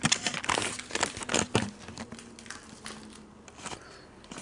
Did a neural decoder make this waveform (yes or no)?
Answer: no